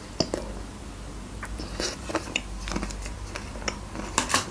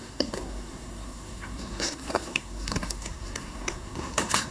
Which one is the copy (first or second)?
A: second